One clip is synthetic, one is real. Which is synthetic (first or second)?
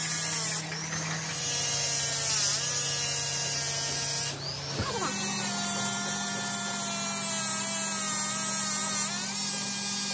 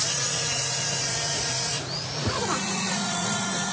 second